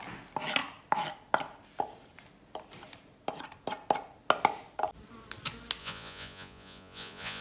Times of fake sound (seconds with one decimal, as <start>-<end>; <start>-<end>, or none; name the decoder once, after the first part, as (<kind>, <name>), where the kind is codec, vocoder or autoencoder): 5.8-7.4 (vocoder, Vocos)